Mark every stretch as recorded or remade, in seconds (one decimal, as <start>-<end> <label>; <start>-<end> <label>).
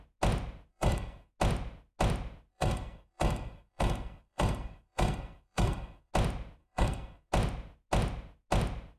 0.0-0.7 recorded; 0.7-1.3 remade; 1.3-2.5 recorded; 2.5-6.1 remade; 6.1-6.6 recorded; 6.6-7.3 remade; 7.3-9.0 recorded